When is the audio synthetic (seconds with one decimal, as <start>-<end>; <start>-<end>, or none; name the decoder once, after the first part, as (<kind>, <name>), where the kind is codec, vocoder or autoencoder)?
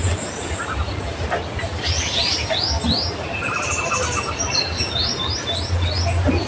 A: none